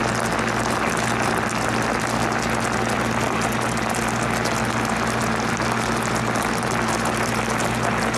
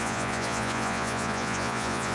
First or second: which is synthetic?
second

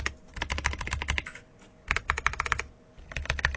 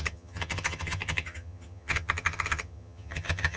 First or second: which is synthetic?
second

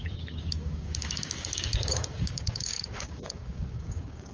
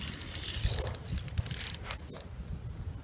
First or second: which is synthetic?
first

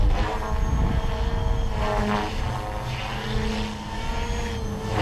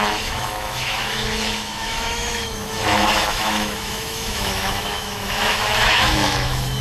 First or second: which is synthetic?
second